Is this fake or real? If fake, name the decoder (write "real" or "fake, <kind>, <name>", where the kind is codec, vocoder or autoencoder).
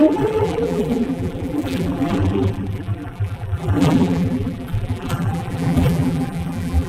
fake, vocoder, BigVGAN v2